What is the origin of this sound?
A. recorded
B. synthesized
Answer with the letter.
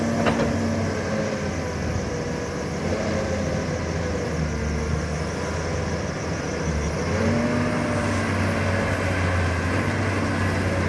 A